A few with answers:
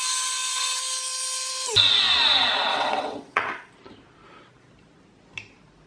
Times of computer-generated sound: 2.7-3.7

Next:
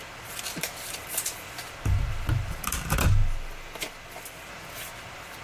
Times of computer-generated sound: none

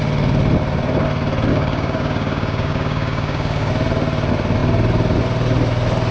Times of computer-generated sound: 1.5-3.7

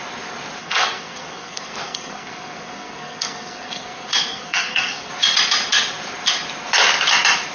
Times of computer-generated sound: 0.6-5.1

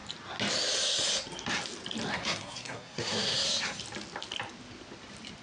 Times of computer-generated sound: 2.1-3.8